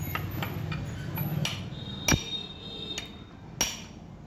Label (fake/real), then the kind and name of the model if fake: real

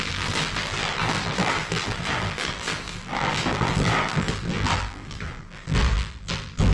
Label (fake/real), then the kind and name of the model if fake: fake, vocoder, BigVGAN v2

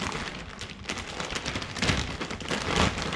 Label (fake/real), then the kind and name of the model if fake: real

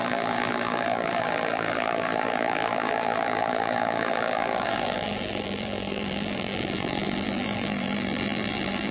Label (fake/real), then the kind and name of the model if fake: fake, vocoder, BigVGAN v2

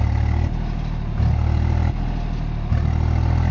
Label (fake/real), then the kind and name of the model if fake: real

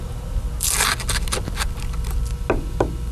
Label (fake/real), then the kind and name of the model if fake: real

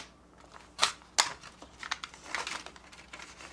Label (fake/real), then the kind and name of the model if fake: real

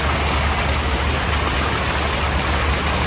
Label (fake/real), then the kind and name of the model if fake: real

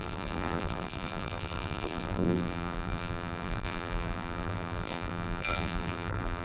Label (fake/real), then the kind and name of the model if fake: fake, vocoder, BigVGAN v2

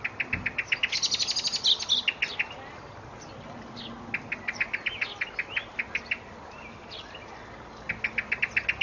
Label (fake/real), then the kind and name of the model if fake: real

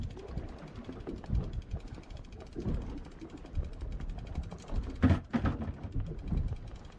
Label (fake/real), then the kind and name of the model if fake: real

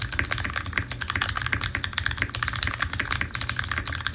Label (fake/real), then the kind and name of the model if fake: real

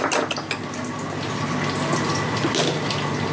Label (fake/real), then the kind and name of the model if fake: real